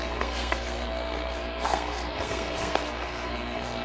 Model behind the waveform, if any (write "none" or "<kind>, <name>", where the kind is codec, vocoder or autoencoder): codec, SNAC